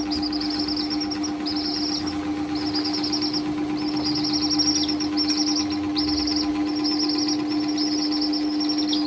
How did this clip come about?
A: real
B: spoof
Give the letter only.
A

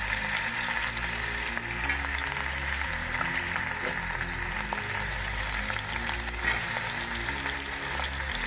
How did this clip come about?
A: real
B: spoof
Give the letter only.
A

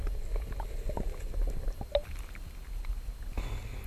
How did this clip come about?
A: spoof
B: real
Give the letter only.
B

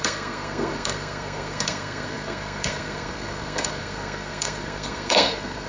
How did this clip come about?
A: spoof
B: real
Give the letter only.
A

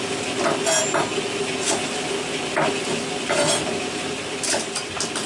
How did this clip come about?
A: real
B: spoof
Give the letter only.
A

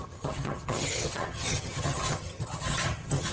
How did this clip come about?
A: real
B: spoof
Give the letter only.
B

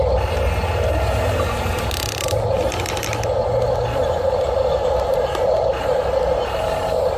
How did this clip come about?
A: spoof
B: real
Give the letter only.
B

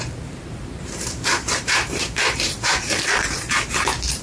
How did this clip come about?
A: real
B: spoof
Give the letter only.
B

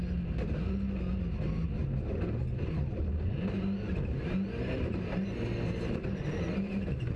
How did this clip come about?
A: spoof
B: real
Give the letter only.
B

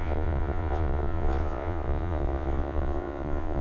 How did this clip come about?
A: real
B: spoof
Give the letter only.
B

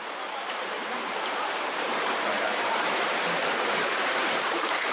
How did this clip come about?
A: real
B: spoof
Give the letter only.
B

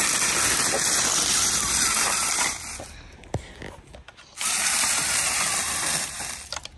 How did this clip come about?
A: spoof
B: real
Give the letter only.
B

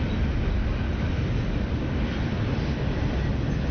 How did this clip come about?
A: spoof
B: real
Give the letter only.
B